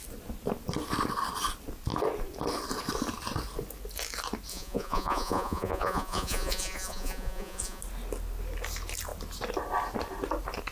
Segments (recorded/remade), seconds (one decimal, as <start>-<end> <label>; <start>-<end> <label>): 0.0-4.5 recorded; 4.5-7.8 remade; 7.8-10.7 recorded